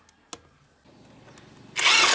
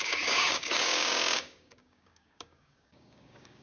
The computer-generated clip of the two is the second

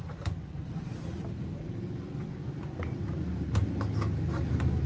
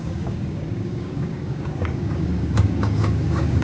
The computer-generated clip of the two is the second